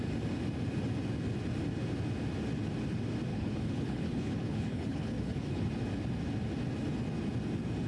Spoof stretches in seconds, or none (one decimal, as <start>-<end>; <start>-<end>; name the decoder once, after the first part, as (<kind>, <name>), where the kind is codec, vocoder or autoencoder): 3.3-5.7 (codec, HILCodec)